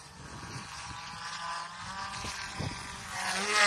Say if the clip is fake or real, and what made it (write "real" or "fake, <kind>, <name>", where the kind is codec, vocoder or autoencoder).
fake, vocoder, Vocos